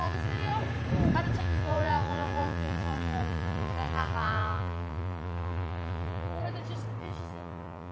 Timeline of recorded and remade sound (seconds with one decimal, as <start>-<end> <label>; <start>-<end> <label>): 0.0-0.5 remade; 0.5-1.4 recorded; 1.4-6.4 remade; 6.4-7.0 recorded; 7.0-7.9 remade